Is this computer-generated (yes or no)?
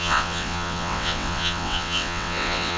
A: yes